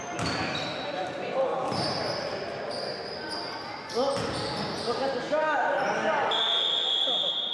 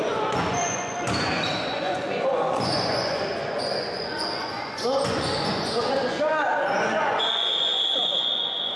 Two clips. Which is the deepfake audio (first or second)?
second